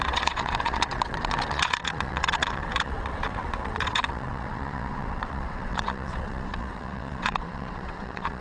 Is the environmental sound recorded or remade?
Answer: remade